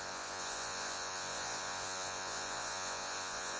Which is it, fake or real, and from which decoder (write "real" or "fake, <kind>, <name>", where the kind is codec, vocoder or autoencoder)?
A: fake, vocoder, Vocos